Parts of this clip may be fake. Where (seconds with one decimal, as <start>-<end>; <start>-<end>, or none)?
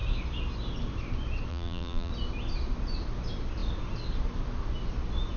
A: 1.5-2.1